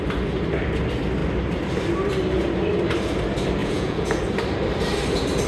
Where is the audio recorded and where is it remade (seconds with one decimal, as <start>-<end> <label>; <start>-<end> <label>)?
0.0-3.6 recorded; 3.6-4.2 remade; 4.2-5.5 recorded